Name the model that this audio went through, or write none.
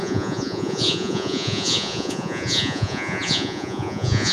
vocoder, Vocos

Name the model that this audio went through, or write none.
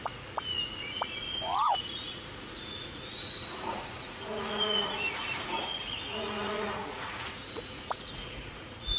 vocoder, Vocos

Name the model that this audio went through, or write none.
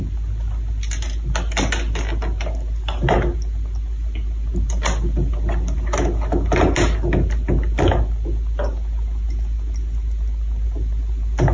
none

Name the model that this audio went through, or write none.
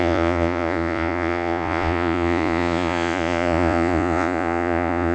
vocoder, Vocos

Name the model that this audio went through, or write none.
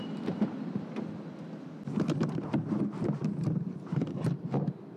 none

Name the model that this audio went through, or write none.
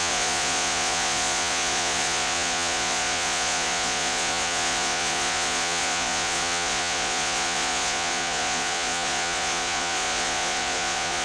vocoder, Vocos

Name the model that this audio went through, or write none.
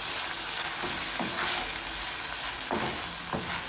none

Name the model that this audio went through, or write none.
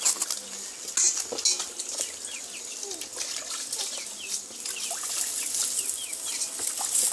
none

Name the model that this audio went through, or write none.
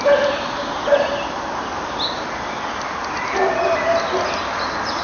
none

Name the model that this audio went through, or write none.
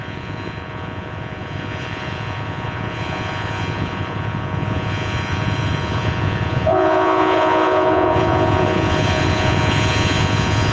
vocoder, Vocos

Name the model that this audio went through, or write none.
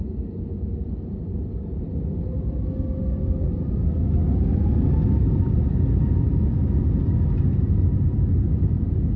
none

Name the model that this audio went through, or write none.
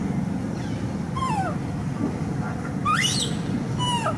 none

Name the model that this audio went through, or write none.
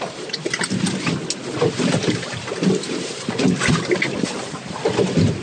none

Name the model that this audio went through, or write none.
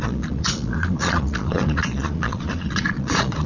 vocoder, Vocos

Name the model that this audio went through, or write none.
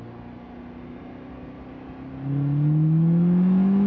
none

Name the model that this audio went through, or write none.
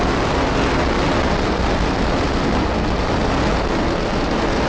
none